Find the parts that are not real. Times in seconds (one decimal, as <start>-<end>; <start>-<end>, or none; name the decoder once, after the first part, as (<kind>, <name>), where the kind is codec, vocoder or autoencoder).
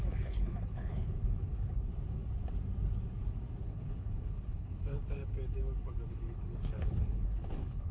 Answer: 0.0-1.9 (codec, HILCodec); 3.6-5.2; 6.1-7.9